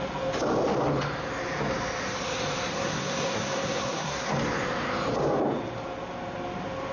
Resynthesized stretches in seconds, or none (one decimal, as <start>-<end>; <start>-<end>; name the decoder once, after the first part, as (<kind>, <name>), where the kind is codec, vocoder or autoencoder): 2.7-4.3 (codec, SNAC)